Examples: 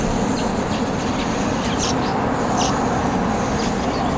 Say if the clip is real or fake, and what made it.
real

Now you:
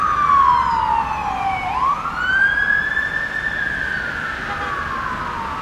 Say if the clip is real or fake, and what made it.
real